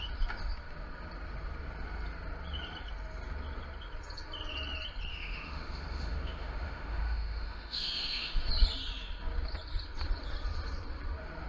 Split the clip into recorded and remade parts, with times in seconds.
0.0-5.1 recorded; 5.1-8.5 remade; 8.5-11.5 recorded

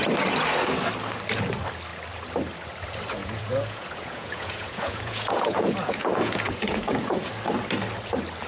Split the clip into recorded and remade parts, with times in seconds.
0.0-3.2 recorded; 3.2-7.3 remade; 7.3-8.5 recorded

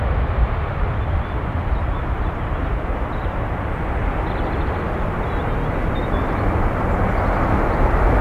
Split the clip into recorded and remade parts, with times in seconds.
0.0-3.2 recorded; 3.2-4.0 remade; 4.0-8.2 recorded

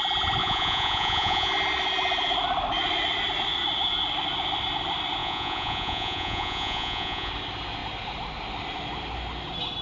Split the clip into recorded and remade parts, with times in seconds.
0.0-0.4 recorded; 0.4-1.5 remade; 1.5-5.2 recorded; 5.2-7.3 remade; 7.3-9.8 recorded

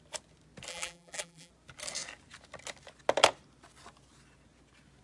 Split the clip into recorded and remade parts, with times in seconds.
0.0-0.7 recorded; 0.7-1.5 remade; 1.5-5.0 recorded

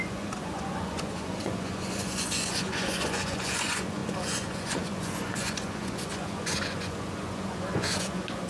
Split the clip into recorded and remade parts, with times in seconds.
0.0-8.5 remade

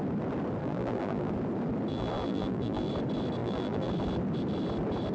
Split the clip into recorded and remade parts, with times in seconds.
0.0-0.6 recorded; 0.6-1.3 remade; 1.3-1.9 recorded; 1.9-2.9 remade; 2.9-3.4 recorded; 3.4-3.9 remade; 3.9-5.1 recorded